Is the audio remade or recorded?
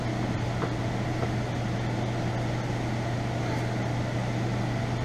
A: recorded